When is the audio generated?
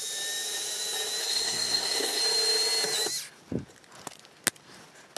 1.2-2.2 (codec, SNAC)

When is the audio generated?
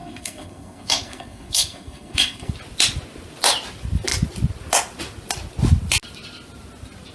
0.0-2.5 (codec, SNAC)